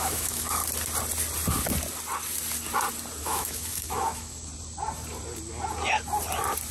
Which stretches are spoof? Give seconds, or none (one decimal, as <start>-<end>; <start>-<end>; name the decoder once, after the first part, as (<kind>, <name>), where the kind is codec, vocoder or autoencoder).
0.0-0.6 (autoencoder, DAC-VAE); 3.2-4.5